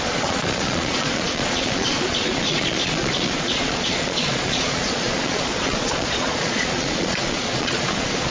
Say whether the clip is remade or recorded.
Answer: remade